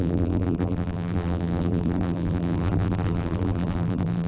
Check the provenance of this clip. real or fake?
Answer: fake